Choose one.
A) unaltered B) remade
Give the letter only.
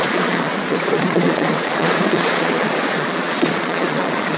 B